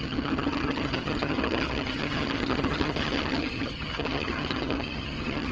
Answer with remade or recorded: remade